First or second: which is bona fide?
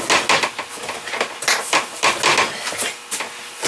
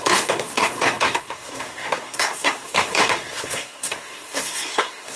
first